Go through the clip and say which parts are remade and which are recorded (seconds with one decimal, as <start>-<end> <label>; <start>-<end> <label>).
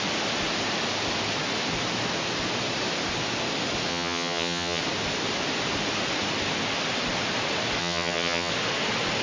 0.0-3.9 recorded; 3.9-4.8 remade; 4.8-7.8 recorded; 7.8-8.5 remade; 8.5-9.2 recorded